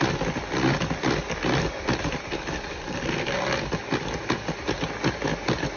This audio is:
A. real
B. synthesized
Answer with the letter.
A